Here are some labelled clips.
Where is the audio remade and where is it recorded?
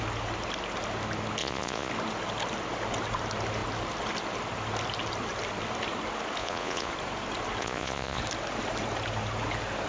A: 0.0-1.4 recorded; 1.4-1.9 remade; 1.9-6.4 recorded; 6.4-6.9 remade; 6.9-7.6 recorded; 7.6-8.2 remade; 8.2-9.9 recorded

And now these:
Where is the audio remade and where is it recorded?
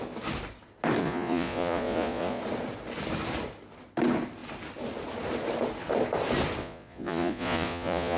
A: 0.0-1.0 recorded; 1.0-2.4 remade; 2.4-6.6 recorded; 6.6-8.2 remade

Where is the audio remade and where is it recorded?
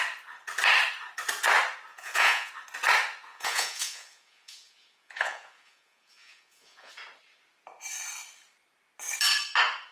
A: 0.0-1.9 recorded; 1.9-2.5 remade; 2.5-3.3 recorded; 3.3-6.9 remade; 6.9-9.9 recorded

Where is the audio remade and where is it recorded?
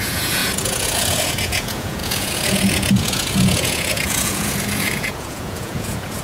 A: 0.0-6.2 remade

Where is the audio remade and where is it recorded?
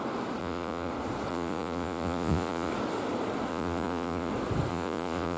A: 0.0-0.4 recorded; 0.4-0.9 remade; 0.9-1.3 recorded; 1.3-2.7 remade; 2.7-3.5 recorded; 3.5-4.3 remade; 4.3-4.7 recorded; 4.7-5.4 remade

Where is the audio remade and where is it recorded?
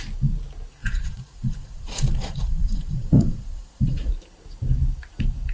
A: 0.0-0.8 recorded; 0.8-4.1 remade; 4.1-5.5 recorded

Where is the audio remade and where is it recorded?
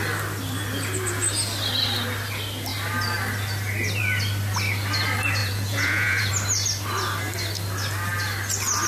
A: 0.0-5.4 recorded; 5.4-6.3 remade; 6.3-8.9 recorded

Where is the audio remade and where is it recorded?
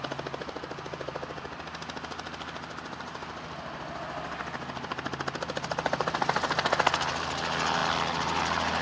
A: 0.0-8.8 recorded